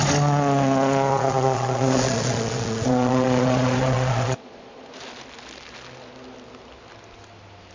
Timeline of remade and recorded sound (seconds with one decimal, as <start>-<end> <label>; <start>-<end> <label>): 0.0-1.1 recorded; 1.1-4.9 remade; 4.9-7.7 recorded